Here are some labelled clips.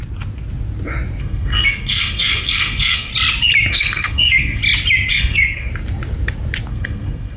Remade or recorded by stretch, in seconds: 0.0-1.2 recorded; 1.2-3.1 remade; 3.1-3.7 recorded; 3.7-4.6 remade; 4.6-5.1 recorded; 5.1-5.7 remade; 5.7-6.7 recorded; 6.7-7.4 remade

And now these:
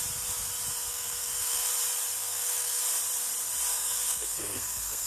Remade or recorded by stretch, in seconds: 0.0-0.9 recorded; 0.9-1.7 remade; 1.7-2.2 recorded; 2.2-2.8 remade; 2.8-3.7 recorded; 3.7-5.1 remade

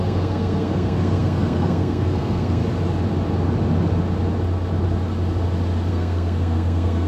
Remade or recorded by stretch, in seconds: 0.0-2.6 remade; 2.6-5.9 recorded; 5.9-7.1 remade

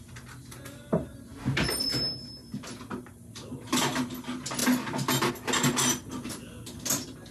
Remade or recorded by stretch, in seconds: 0.0-7.3 recorded

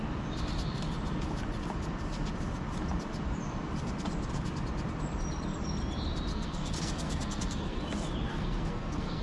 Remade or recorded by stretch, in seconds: 0.0-6.3 recorded; 6.3-7.8 remade; 7.8-8.3 recorded; 8.3-9.2 remade

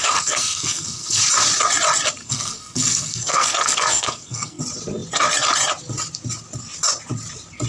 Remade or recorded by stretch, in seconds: 0.0-1.2 remade; 1.2-2.2 recorded; 2.2-4.6 remade; 4.6-7.7 recorded